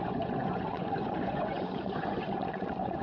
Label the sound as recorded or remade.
remade